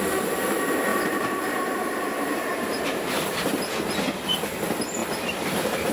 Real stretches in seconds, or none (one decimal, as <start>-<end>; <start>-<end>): 0.0-0.9; 3.6-5.0